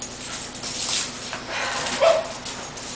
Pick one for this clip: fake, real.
real